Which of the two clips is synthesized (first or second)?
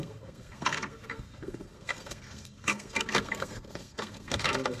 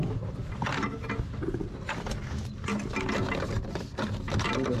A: first